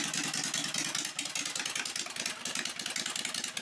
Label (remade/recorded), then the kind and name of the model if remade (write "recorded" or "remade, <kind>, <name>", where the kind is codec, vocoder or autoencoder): recorded